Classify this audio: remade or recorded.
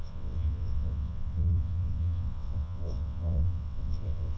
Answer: remade